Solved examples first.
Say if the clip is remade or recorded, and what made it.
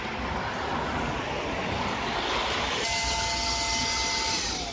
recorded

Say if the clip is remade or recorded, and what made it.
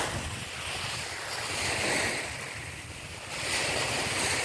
recorded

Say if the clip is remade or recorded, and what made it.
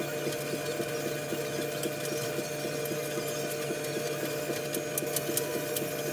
recorded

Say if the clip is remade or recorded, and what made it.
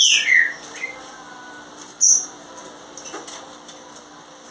recorded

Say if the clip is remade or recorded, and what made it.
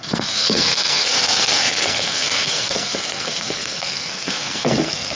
remade, codec, SNAC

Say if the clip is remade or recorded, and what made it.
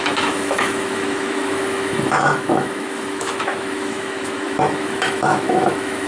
remade, autoencoder, DAC-VAE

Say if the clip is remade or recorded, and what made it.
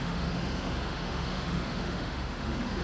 remade, autoencoder, DAC-VAE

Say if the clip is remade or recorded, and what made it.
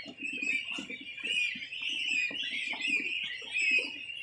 recorded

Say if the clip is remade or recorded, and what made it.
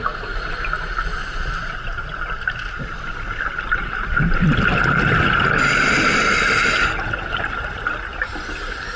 recorded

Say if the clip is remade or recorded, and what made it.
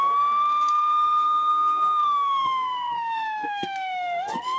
remade, codec, SNAC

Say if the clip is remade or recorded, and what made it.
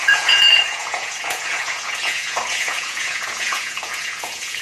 remade, vocoder, Vocos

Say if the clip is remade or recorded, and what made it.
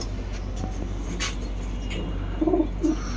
recorded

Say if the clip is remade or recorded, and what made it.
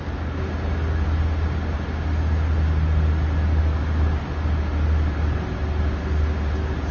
recorded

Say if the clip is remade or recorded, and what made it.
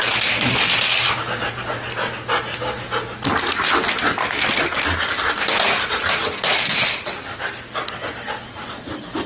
recorded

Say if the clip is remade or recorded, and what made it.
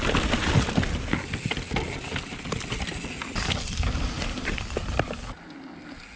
recorded